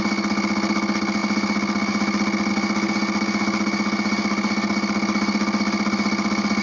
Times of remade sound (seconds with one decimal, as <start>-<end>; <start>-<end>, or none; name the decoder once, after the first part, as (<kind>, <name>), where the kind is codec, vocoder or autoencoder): none